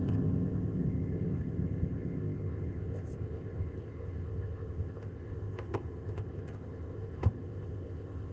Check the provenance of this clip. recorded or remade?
remade